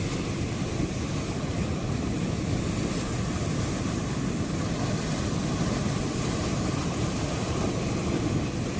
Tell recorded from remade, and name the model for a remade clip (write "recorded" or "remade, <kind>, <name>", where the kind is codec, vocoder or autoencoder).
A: recorded